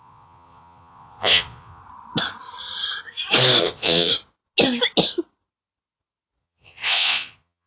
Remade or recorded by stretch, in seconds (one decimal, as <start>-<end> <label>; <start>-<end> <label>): 0.0-1.8 remade; 1.8-3.6 recorded; 3.6-4.1 remade; 4.1-6.4 recorded; 6.4-7.7 remade